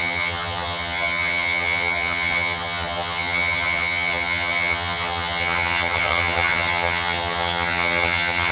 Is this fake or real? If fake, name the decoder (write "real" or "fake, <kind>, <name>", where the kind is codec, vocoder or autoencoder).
fake, vocoder, HiFi-GAN